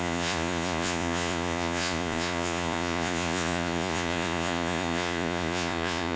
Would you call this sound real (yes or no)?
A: no